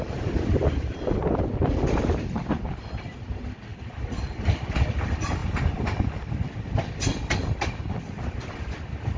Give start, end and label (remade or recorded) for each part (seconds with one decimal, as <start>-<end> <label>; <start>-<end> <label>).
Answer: 0.0-9.2 recorded

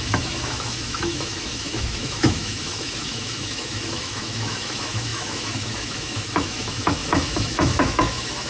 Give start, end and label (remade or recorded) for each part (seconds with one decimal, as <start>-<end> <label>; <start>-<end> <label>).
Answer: 0.0-8.5 remade

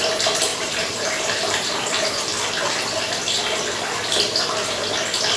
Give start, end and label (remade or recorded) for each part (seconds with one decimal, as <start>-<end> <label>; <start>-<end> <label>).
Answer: 0.0-0.5 recorded; 0.5-2.2 remade; 2.2-5.4 recorded

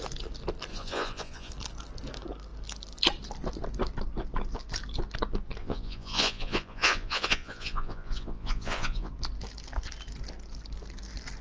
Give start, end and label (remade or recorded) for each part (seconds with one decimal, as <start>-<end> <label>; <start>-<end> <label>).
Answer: 0.0-0.7 recorded; 0.7-1.5 remade; 1.5-5.6 recorded; 5.6-9.1 remade; 9.1-11.4 recorded